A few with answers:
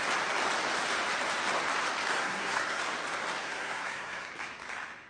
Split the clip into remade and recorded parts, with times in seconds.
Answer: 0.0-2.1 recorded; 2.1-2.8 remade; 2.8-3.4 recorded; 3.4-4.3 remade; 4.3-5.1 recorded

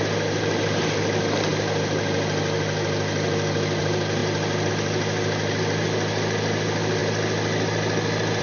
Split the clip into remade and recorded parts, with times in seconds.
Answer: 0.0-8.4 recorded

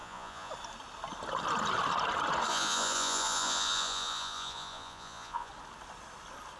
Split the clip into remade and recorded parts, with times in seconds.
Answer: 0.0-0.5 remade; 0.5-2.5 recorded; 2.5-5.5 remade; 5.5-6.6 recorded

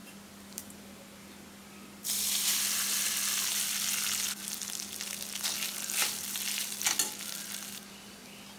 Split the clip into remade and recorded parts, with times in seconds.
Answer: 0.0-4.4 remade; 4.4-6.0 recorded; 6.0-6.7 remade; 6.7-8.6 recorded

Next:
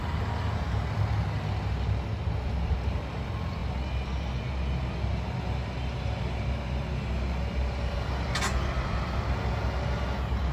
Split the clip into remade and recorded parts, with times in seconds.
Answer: 0.0-10.5 recorded

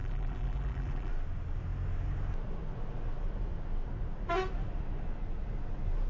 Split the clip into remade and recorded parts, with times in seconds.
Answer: 0.0-1.1 remade; 1.1-6.1 recorded

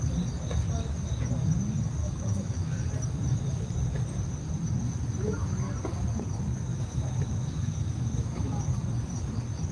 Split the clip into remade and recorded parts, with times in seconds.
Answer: 0.0-2.0 recorded; 2.0-2.9 remade; 2.9-6.7 recorded; 6.7-8.5 remade; 8.5-9.7 recorded

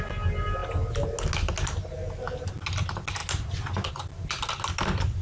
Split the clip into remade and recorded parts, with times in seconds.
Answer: 0.0-5.2 recorded